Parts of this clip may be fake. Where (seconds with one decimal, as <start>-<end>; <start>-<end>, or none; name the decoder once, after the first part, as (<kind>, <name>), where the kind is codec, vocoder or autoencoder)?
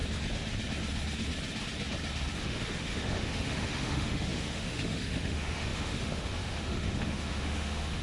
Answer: 2.4-8.0 (autoencoder, DAC-VAE)